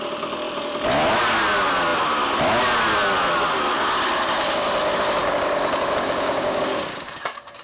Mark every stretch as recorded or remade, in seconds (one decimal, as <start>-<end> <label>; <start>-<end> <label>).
0.0-5.2 recorded; 5.2-7.6 remade

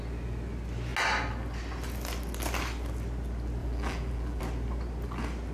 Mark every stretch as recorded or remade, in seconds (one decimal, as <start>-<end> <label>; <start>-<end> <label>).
0.0-3.6 recorded; 3.6-4.4 remade; 4.4-5.5 recorded